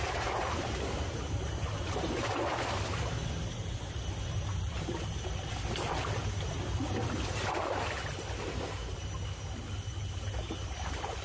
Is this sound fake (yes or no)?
no